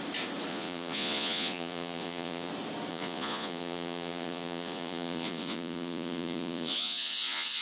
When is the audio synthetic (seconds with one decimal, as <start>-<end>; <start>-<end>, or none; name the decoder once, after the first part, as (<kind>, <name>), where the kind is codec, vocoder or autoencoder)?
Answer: 0.5-2.5 (vocoder, Vocos); 2.9-7.6